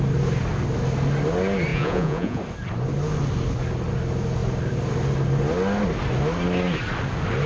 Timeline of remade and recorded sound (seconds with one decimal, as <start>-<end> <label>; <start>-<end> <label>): 0.0-1.7 recorded; 1.7-2.4 remade; 2.4-7.5 recorded